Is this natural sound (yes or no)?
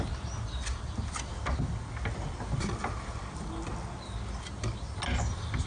yes